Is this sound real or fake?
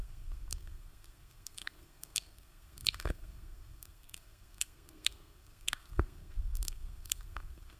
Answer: fake